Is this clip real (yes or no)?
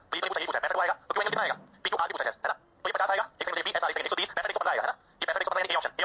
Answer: yes